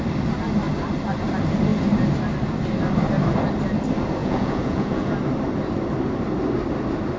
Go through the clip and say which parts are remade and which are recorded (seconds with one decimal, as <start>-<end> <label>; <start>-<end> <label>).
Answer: 0.0-4.2 recorded; 4.2-5.1 remade; 5.1-7.2 recorded